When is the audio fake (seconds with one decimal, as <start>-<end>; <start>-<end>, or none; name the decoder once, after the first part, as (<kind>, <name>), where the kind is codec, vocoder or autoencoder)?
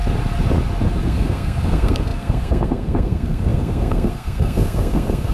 1.0-5.3 (codec, SNAC)